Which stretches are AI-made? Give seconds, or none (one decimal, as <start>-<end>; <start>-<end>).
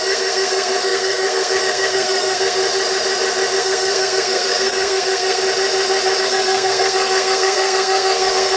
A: 0.0-2.6; 3.6-5.4; 6.2-8.6